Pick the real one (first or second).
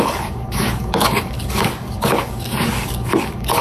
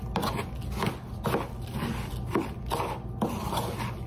second